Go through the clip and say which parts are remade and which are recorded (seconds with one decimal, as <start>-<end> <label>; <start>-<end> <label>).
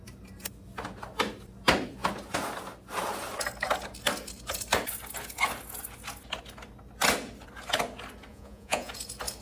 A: 0.0-8.3 recorded; 8.3-8.9 remade; 8.9-9.4 recorded